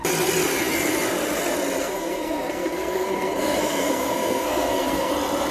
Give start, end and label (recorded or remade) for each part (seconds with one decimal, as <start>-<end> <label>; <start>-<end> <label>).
0.0-1.8 recorded; 1.8-5.1 remade; 5.1-5.5 recorded